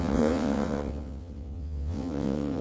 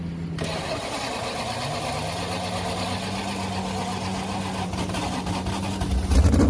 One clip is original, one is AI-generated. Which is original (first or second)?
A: second